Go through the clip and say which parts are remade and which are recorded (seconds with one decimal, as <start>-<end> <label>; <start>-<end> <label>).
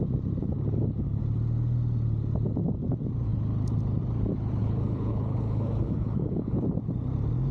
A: 0.0-0.4 recorded; 0.4-1.2 remade; 1.2-4.6 recorded; 4.6-6.6 remade; 6.6-7.5 recorded